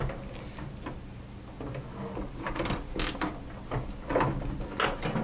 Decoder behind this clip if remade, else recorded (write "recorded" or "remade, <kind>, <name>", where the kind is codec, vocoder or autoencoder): recorded